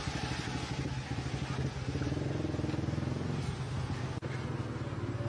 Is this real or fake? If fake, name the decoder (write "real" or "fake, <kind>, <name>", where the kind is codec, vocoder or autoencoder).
real